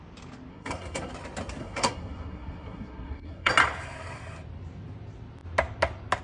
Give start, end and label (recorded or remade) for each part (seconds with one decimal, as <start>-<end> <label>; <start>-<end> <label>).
0.0-0.5 recorded; 0.5-1.1 remade; 1.1-1.6 recorded; 1.6-3.5 remade; 3.5-6.2 recorded